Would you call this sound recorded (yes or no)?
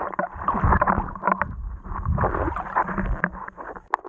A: yes